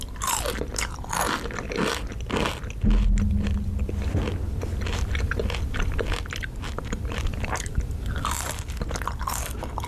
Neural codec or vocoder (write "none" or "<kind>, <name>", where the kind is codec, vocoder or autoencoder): none